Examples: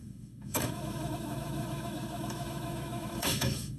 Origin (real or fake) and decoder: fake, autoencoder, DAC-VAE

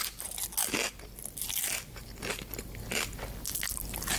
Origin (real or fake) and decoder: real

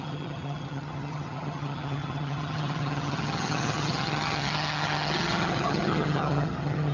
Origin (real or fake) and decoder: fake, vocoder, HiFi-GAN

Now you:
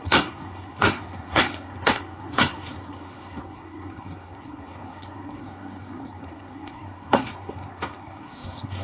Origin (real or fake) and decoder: fake, codec, SNAC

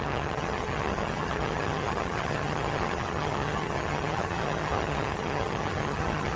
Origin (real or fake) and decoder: fake, vocoder, HiFi-GAN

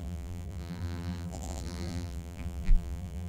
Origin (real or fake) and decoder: fake, vocoder, BigVGAN v2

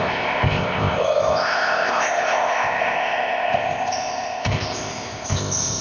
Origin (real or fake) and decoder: fake, codec, ZipCodec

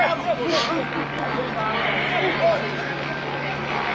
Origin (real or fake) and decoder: real